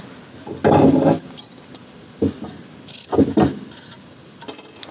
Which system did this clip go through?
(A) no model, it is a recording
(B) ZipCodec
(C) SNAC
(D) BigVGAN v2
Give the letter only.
A